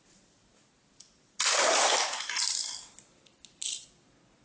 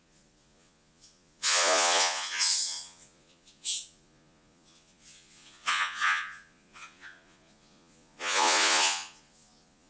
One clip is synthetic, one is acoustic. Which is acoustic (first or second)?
first